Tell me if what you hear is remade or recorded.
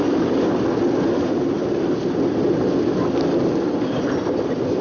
recorded